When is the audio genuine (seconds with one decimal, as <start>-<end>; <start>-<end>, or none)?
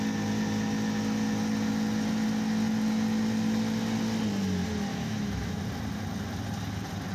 0.0-4.9; 5.6-7.1